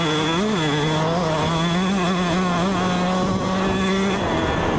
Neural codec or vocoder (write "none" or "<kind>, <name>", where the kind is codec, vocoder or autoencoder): none